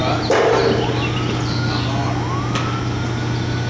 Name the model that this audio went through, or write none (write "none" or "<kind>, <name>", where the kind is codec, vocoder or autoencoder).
none